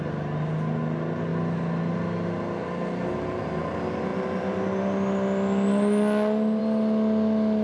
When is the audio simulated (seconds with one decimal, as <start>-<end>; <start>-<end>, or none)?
none